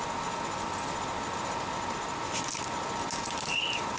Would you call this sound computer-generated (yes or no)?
no